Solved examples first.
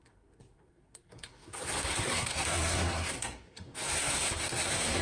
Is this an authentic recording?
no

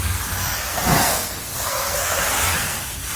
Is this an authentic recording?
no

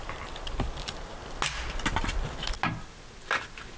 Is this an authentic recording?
yes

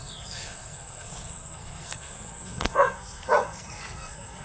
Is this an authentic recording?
no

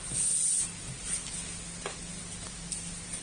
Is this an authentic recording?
yes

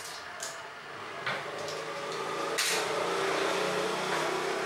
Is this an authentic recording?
yes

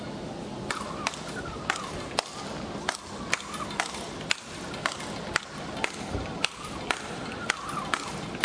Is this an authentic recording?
yes